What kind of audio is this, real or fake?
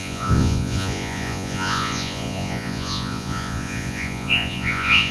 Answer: fake